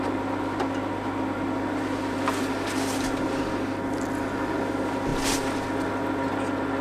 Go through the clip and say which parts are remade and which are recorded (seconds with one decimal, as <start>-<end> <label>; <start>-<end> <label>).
0.0-6.8 recorded